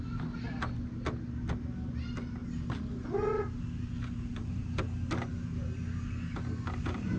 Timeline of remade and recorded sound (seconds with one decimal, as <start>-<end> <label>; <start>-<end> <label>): 0.0-4.3 recorded; 4.3-4.8 remade; 4.8-7.2 recorded